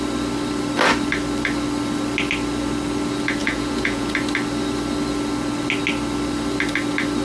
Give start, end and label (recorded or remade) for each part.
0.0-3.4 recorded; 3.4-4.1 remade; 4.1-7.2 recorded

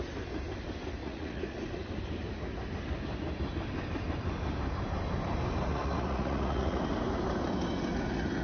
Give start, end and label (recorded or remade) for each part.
0.0-1.0 recorded; 1.0-1.7 remade; 1.7-5.7 recorded; 5.7-6.8 remade; 6.8-8.4 recorded

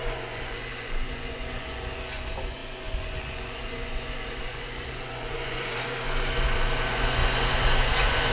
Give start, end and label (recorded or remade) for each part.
0.0-8.3 remade